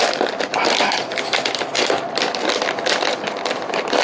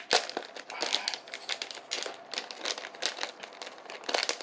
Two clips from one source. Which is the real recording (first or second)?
second